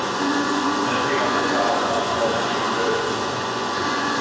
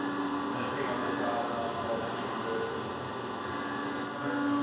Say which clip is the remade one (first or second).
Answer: first